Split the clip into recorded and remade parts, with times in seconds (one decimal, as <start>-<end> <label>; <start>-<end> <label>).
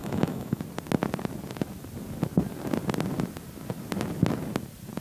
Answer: 0.0-0.6 remade; 0.6-5.0 recorded